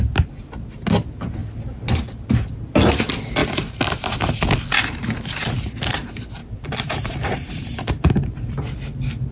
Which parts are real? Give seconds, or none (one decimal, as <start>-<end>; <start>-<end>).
0.0-1.4; 2.0-6.4; 8.7-9.3